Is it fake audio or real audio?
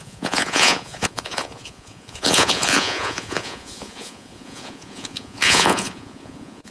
fake